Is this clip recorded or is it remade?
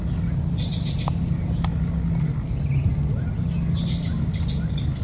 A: recorded